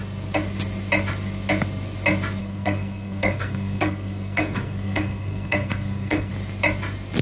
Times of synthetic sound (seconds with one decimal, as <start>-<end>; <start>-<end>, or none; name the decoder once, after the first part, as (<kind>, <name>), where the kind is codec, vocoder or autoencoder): 2.4-6.3 (codec, SNAC)